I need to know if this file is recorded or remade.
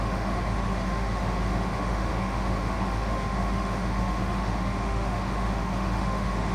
remade